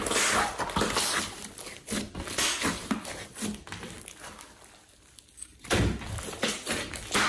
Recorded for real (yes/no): yes